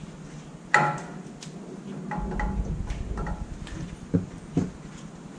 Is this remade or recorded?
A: recorded